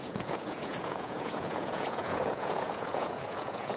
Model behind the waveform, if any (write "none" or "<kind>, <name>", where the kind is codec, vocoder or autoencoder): vocoder, Vocos